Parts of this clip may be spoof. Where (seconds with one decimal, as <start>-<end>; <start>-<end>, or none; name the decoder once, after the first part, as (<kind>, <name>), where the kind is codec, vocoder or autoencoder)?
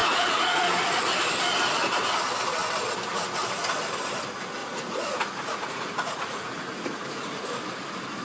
0.0-0.7 (vocoder, Vocos); 4.6-7.5